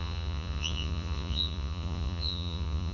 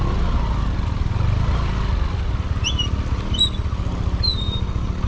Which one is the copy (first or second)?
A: first